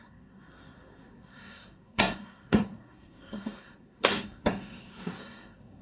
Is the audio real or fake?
fake